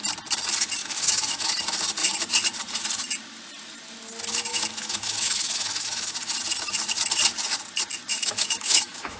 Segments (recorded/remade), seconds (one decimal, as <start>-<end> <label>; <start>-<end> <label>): 0.0-0.8 recorded; 0.8-1.5 remade; 1.5-4.5 recorded; 4.5-6.1 remade; 6.1-8.1 recorded; 8.1-9.2 remade